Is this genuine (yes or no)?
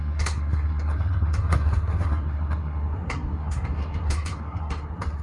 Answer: no